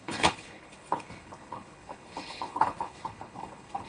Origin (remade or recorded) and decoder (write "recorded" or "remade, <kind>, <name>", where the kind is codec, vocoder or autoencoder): remade, codec, HILCodec